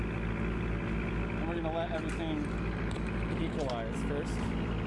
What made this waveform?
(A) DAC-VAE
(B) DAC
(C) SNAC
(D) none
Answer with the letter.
D